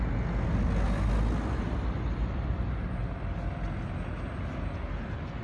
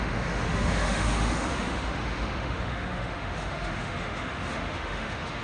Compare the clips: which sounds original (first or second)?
first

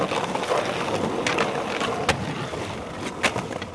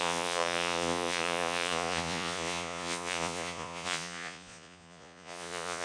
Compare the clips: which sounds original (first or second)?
first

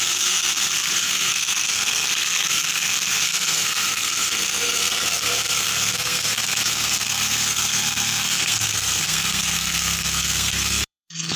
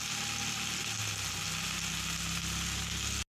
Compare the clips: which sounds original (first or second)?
second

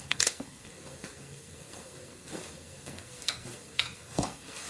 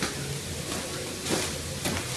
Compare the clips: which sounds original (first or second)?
second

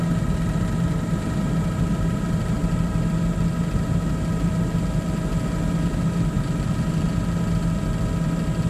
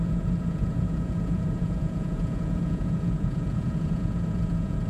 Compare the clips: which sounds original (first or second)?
first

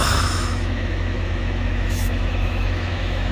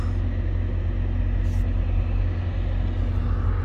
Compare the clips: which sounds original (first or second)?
second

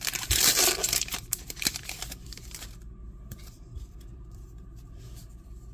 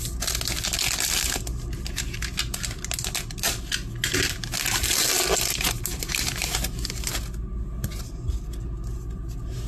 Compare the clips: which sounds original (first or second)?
second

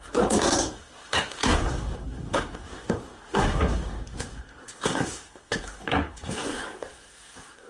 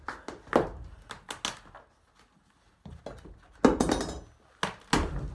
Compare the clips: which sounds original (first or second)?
second